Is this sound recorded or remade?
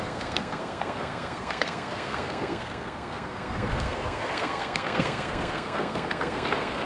remade